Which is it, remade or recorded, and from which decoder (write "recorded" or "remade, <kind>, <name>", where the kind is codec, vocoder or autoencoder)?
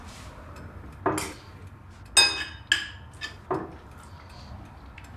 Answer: recorded